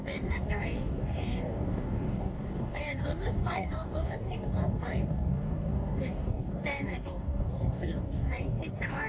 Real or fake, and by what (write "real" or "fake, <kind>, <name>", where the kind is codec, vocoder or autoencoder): fake, codec, DAC